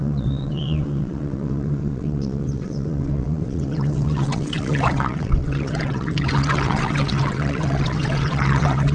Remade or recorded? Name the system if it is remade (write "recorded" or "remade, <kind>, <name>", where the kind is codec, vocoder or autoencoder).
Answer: remade, vocoder, WaveNeXt